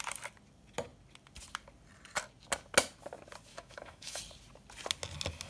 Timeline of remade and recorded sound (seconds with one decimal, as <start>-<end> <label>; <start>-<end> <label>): 0.0-3.5 recorded; 3.5-4.2 remade; 4.2-5.5 recorded

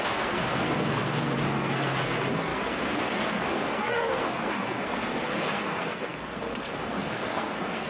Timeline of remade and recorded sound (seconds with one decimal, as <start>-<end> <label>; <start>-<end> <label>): 0.0-7.9 remade

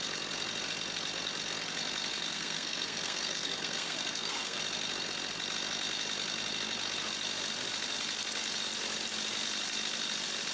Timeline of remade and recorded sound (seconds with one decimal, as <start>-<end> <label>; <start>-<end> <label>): 0.0-2.1 recorded; 2.1-4.6 remade; 4.6-10.5 recorded

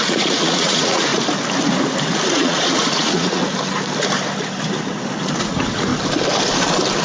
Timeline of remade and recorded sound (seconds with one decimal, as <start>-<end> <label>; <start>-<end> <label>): 0.0-1.1 remade; 1.1-2.3 recorded; 2.3-3.4 remade; 3.4-5.4 recorded; 5.4-5.9 remade; 5.9-7.0 recorded

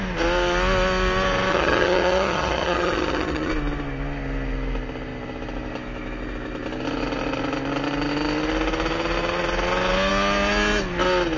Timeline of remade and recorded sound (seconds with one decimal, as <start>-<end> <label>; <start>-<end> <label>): 0.0-1.5 recorded; 1.5-3.5 remade; 3.5-11.4 recorded

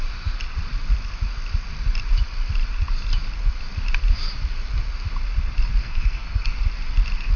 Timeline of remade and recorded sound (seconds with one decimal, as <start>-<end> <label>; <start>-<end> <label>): 0.0-5.8 recorded; 5.8-6.6 remade; 6.6-7.4 recorded

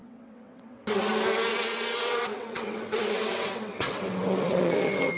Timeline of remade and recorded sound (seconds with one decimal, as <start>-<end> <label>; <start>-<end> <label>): 0.0-1.1 remade; 1.1-1.5 recorded; 1.5-4.6 remade; 4.6-5.2 recorded